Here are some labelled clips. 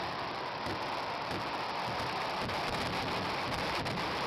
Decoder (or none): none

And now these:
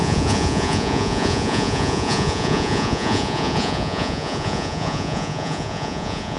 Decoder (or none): vocoder, Vocos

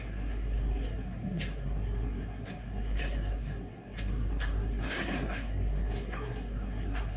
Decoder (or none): codec, SNAC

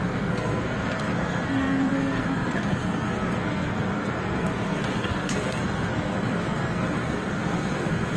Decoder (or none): codec, SNAC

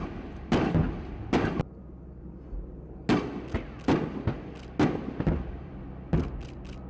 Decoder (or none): none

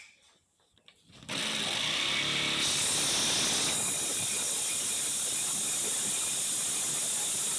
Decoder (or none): none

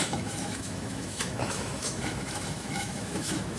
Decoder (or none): autoencoder, DAC-VAE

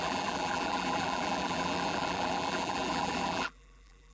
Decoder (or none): vocoder, BigVGAN v2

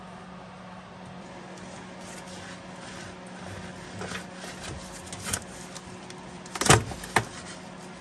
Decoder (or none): none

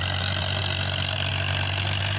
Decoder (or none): none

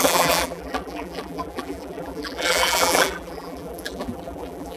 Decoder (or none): vocoder, BigVGAN v2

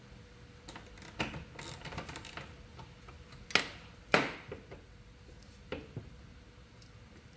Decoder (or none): none